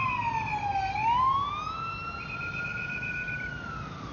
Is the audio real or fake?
real